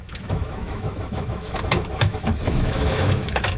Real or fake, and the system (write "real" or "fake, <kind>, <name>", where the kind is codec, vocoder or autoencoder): fake, autoencoder, DAC-VAE